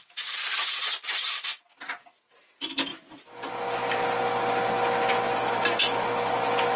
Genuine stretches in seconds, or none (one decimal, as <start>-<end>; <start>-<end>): 0.0-6.8